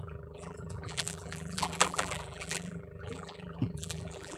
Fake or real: fake